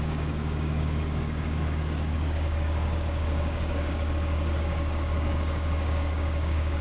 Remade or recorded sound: remade